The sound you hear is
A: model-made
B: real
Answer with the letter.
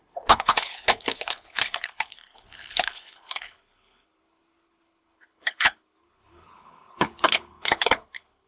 A